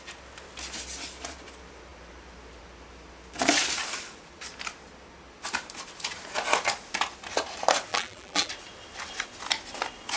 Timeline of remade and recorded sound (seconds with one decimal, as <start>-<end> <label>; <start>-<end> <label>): 0.0-7.9 recorded; 7.9-8.5 remade; 8.5-10.2 recorded